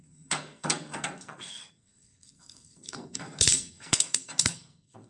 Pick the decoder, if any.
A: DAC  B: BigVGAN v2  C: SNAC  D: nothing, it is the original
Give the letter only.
C